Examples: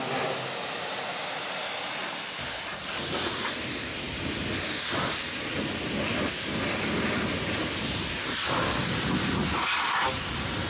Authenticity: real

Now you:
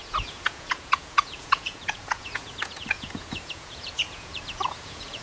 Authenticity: fake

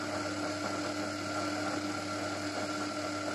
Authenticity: real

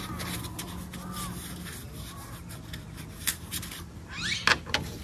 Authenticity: real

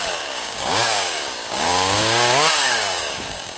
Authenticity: fake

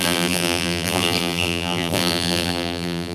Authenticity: fake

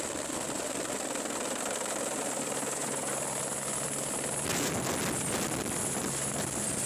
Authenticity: real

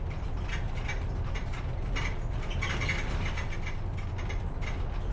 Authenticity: real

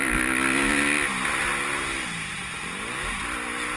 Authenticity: real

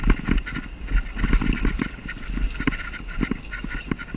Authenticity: real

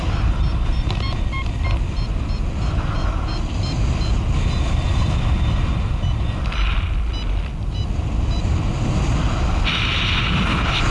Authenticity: real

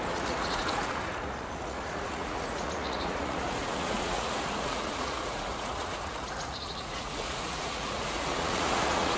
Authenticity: fake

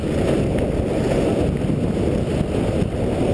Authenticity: real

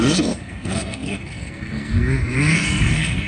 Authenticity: fake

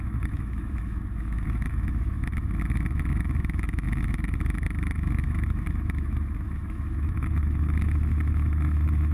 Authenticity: fake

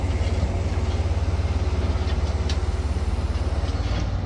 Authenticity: real